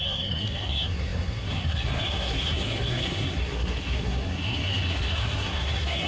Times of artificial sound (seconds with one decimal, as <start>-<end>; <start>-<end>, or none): 0.0-6.1